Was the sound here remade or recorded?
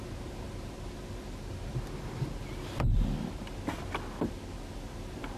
recorded